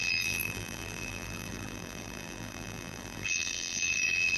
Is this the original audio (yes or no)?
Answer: no